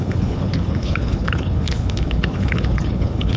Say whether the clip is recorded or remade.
remade